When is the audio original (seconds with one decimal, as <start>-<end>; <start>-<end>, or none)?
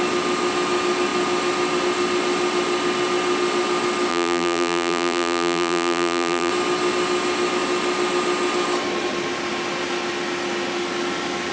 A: 0.0-4.1; 6.5-11.5